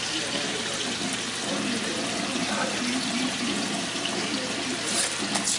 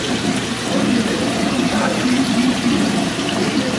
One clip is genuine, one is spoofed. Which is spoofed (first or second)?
second